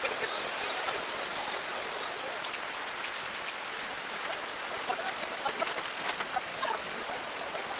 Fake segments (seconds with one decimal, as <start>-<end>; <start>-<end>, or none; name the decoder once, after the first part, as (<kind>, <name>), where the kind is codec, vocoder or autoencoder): 6.5-7.0 (codec, DAC)